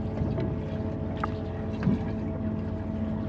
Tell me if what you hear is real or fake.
real